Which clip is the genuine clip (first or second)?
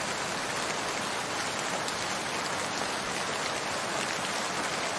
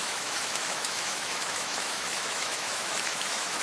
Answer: first